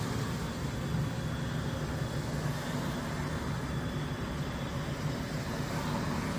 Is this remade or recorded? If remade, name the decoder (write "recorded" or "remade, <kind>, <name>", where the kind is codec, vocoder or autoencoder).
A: recorded